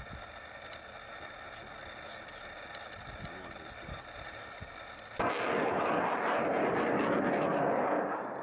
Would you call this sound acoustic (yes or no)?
yes